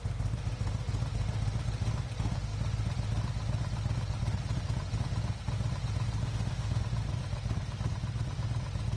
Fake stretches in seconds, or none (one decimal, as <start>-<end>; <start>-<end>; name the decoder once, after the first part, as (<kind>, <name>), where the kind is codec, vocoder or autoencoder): 6.2-6.8 (autoencoder, DAC-VAE)